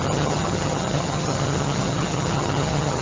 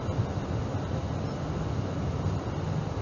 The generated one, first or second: first